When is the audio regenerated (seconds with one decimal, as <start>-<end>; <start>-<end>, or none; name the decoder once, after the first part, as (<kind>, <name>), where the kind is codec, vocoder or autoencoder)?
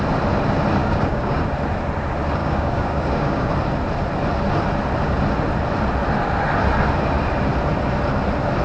0.8-1.4 (codec, DAC); 2.4-3.5